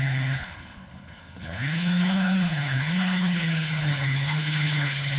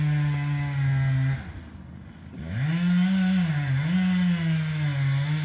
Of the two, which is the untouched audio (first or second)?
second